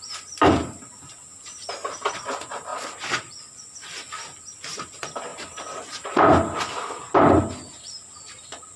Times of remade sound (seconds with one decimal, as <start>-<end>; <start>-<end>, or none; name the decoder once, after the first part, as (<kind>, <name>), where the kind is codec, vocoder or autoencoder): none